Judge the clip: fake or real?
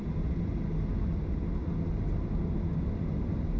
real